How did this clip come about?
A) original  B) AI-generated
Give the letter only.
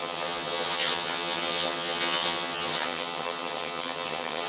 B